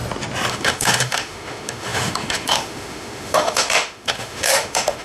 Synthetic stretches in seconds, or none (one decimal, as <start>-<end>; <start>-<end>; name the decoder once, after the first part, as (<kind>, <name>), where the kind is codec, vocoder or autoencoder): 0.5-5.0 (autoencoder, DAC-VAE)